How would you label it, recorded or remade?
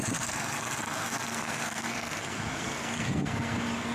remade